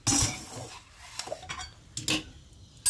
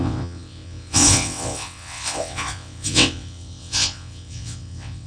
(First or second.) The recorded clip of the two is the first